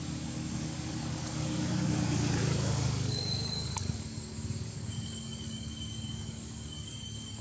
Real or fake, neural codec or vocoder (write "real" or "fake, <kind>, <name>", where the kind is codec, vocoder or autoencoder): fake, codec, DAC